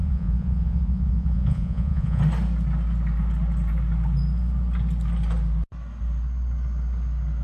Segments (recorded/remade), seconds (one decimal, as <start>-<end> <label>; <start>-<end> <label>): 0.0-2.2 remade; 2.2-7.4 recorded